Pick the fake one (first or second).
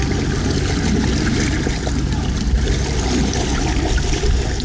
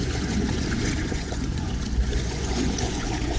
second